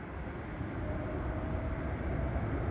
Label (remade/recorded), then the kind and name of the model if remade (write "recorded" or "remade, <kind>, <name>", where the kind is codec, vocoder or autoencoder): recorded